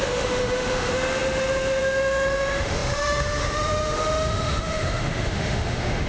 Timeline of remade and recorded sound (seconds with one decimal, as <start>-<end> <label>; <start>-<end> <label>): 0.0-6.1 remade